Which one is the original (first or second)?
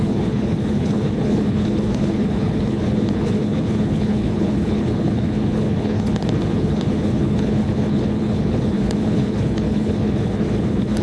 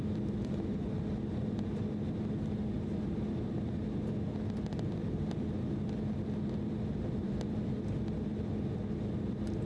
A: second